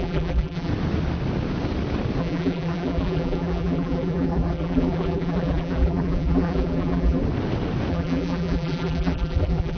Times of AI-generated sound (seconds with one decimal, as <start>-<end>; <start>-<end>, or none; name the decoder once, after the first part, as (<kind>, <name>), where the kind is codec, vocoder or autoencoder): 0.0-0.7 (vocoder, BigVGAN v2); 2.2-7.2; 7.9-9.8